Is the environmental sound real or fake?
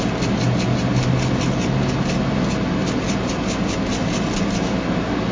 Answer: real